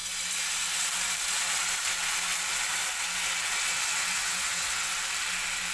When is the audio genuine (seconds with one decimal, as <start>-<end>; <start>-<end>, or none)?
0.0-3.7; 4.9-5.7

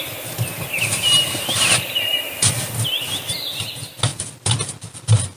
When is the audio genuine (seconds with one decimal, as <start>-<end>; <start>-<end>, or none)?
0.0-5.4

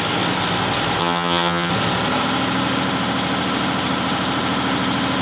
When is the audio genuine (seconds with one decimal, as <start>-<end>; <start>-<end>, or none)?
0.0-1.0; 1.7-5.2

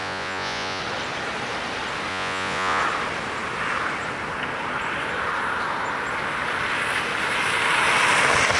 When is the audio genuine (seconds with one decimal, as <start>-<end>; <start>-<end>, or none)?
0.8-2.1; 2.8-8.6

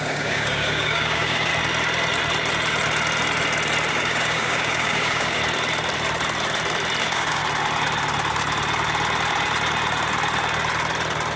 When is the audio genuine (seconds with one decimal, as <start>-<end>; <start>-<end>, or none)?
1.5-3.9; 5.4-7.0; 7.4-11.4

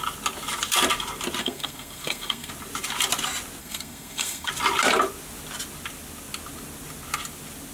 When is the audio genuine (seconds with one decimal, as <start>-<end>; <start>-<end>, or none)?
0.0-1.4; 2.5-3.6; 4.5-7.7

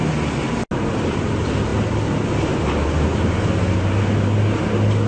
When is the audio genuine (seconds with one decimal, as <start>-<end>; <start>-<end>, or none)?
0.0-5.1